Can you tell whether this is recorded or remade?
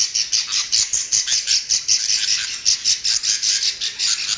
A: recorded